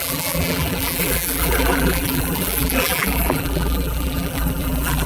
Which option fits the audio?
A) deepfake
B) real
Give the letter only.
A